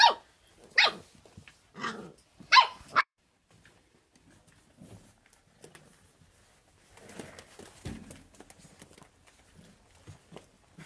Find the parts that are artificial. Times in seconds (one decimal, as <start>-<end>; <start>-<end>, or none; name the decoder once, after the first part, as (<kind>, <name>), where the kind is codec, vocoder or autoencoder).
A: 2.3-4.0 (vocoder, BigVGAN v2)